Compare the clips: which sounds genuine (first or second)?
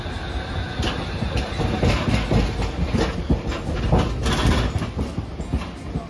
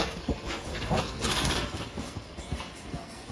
first